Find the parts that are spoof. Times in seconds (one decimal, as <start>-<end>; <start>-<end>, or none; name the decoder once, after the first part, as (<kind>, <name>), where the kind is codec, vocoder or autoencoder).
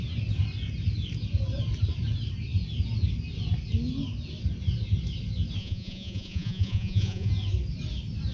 5.6-7.3 (vocoder, Vocos)